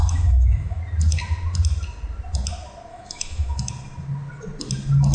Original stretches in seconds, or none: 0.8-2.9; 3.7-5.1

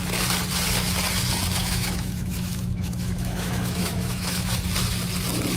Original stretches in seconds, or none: 0.0-1.6; 4.5-5.6

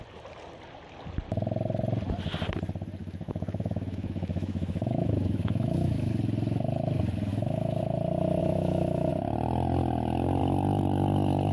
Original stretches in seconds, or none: 0.0-3.0; 6.1-7.3; 7.8-8.4; 9.1-11.5